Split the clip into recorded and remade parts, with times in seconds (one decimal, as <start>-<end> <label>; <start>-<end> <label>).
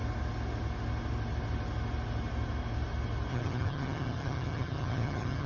0.0-3.3 recorded; 3.3-5.5 remade